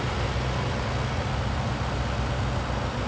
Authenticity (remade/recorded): recorded